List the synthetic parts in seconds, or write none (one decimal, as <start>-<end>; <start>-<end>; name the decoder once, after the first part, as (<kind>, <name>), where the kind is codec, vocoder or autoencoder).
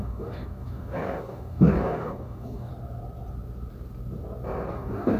0.0-2.7 (codec, DAC); 4.7-5.2